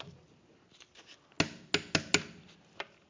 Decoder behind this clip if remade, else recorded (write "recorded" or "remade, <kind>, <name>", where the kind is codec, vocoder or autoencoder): recorded